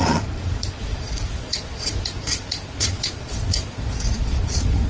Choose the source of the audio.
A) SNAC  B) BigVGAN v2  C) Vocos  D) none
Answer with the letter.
C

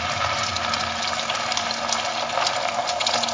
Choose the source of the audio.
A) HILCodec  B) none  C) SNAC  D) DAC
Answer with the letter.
B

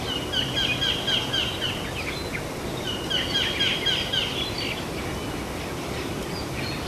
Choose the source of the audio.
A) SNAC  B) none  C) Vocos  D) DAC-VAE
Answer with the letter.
B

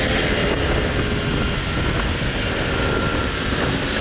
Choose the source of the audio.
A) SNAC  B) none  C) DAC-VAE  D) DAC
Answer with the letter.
B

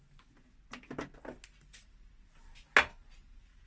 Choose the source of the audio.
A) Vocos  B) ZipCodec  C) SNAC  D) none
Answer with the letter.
D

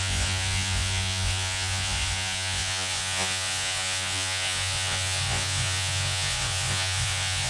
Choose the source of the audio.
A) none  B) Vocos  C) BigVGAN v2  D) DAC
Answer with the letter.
B